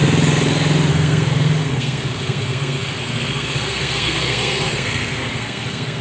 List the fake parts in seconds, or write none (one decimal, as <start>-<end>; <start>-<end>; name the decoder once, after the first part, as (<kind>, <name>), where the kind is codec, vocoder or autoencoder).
0.9-6.0 (codec, SNAC)